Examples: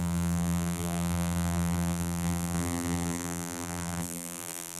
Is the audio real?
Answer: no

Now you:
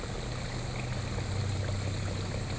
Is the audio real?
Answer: yes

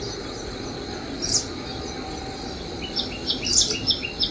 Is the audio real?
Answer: yes